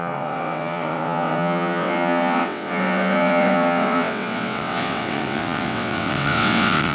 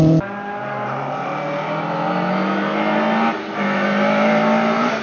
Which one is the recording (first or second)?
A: second